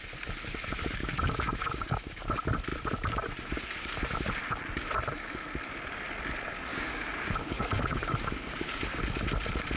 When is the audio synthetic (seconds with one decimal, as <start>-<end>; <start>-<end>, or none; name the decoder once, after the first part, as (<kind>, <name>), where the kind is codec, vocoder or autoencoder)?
1.0-2.2 (codec, DAC); 6.7-9.0